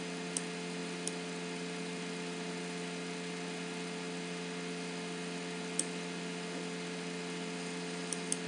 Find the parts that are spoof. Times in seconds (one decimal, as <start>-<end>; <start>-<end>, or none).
none